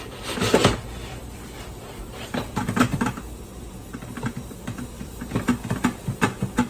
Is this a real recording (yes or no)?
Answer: no